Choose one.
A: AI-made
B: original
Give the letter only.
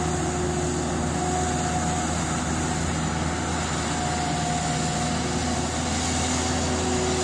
B